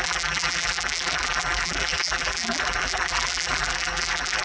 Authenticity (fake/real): fake